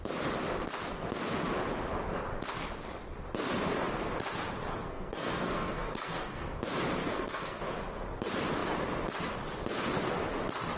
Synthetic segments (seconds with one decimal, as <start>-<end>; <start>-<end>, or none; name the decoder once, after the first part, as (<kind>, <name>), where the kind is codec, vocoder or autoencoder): 4.7-6.6 (codec, SNAC); 7.0-7.6